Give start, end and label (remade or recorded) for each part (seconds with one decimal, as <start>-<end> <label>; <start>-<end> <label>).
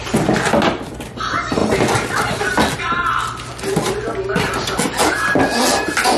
0.0-6.2 recorded